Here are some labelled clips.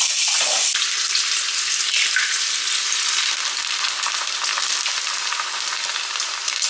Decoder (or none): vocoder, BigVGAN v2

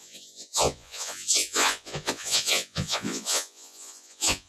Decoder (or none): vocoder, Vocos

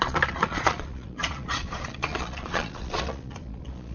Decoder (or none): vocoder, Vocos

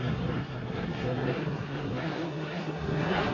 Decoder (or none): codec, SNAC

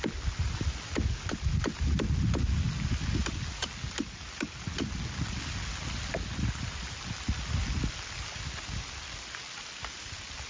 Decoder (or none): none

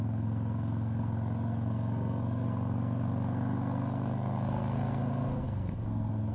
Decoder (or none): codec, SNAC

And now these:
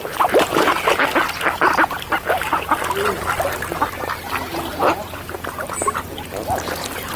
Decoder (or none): none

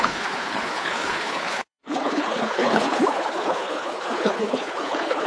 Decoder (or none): codec, HILCodec